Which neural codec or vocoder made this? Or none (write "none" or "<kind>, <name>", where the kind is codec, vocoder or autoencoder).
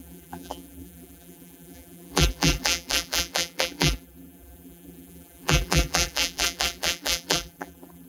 vocoder, BigVGAN v2